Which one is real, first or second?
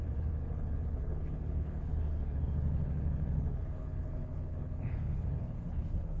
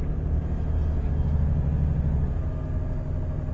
second